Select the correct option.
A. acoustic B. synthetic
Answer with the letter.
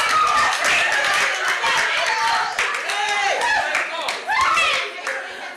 A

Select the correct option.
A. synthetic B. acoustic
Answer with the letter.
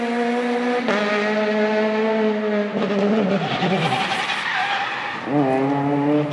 B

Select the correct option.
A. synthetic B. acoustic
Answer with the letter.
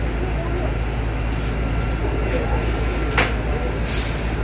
B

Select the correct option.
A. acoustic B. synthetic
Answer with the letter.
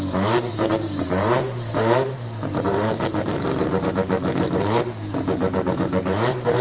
B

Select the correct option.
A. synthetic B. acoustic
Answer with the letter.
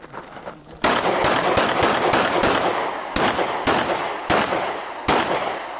B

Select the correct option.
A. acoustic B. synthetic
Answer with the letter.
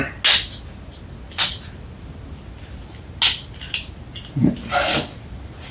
A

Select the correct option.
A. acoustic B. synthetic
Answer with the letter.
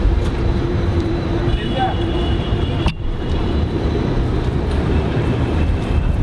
B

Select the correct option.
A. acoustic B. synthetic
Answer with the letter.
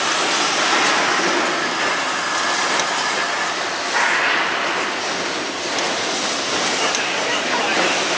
A